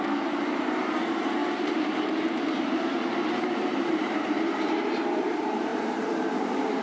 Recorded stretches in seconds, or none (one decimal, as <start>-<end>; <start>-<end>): none